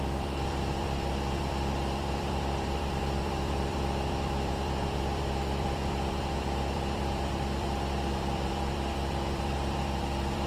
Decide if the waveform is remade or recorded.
remade